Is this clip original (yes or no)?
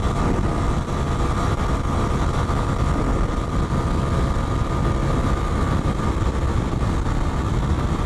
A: yes